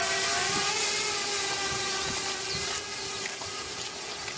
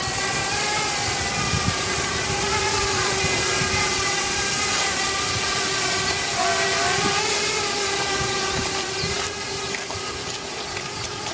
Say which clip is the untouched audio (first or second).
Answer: first